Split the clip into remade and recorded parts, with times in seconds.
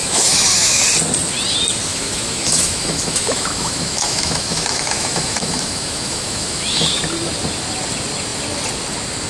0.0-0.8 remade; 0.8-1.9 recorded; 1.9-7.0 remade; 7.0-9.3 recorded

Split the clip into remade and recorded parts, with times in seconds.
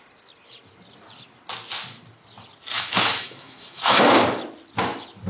0.0-2.7 recorded; 2.7-4.0 remade; 4.0-5.3 recorded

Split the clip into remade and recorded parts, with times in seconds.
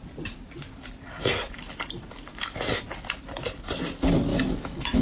0.0-2.3 recorded; 2.3-2.8 remade; 2.8-4.3 recorded; 4.3-5.0 remade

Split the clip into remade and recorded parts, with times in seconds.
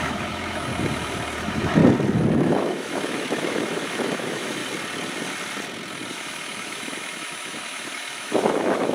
0.0-0.7 remade; 0.7-1.4 recorded; 1.4-1.8 remade; 1.8-2.3 recorded; 2.3-4.6 remade; 4.6-6.1 recorded; 6.1-8.9 remade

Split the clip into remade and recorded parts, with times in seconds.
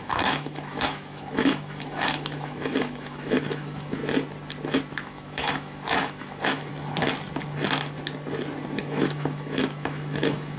0.0-4.0 remade; 4.0-4.9 recorded; 4.9-6.7 remade; 6.7-8.8 recorded; 8.8-10.6 remade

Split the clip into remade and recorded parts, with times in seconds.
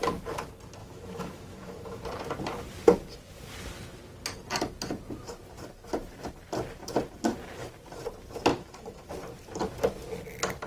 0.0-0.8 recorded; 0.8-2.0 remade; 2.0-8.5 recorded; 8.5-9.1 remade; 9.1-10.7 recorded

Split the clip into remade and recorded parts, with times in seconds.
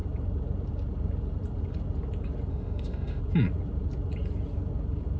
0.0-2.5 recorded; 2.5-3.2 remade; 3.2-5.2 recorded